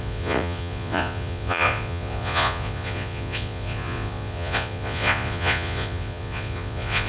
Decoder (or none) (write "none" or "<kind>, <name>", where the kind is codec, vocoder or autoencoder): vocoder, Vocos